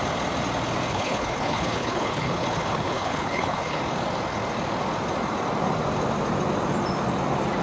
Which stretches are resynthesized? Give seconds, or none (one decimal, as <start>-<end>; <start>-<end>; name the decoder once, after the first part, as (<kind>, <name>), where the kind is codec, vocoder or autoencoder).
0.9-3.8 (codec, HILCodec)